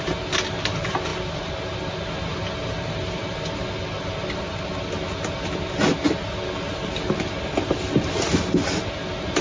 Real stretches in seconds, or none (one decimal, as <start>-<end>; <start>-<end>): 0.0-9.4